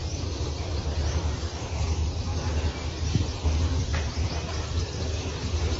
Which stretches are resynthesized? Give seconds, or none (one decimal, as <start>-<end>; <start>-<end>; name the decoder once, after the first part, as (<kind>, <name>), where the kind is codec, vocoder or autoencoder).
0.0-2.3 (vocoder, BigVGAN v2); 3.4-5.8